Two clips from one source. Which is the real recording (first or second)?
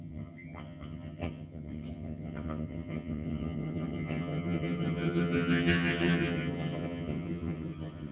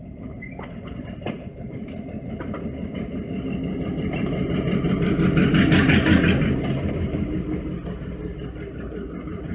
second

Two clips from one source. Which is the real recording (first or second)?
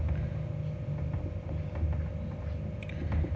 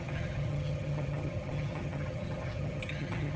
first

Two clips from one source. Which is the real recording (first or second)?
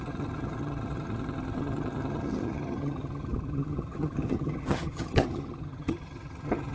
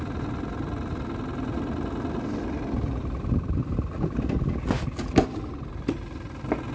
second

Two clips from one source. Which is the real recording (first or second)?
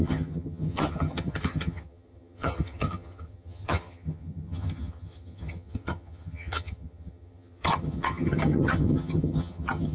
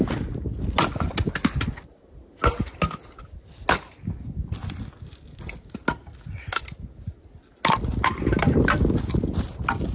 second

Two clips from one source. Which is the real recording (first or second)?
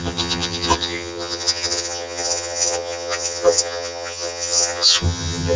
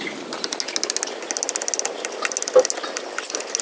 second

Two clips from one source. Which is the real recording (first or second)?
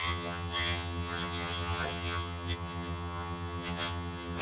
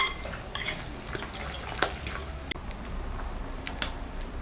second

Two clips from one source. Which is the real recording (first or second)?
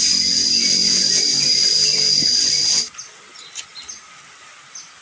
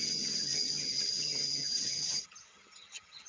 first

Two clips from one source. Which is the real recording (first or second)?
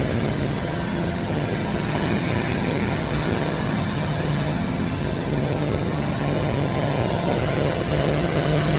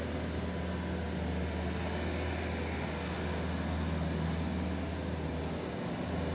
second